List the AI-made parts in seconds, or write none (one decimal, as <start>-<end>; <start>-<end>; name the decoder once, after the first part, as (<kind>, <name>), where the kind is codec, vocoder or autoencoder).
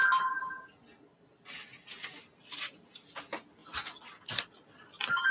none